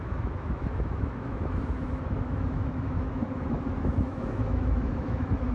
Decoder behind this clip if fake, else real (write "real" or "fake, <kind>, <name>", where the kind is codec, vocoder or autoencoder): fake, autoencoder, DAC-VAE